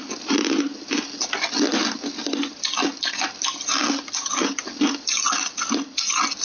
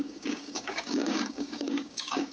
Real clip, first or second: first